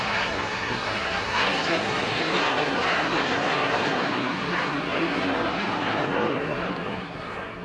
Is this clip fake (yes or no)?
yes